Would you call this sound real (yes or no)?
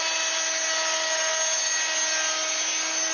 yes